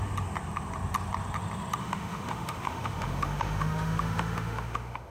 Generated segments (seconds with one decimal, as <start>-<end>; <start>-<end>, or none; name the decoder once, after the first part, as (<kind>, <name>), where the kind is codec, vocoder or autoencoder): 1.8-5.1 (autoencoder, DAC-VAE)